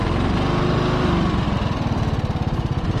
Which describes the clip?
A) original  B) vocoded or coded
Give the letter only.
A